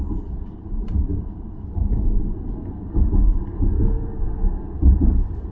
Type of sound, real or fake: fake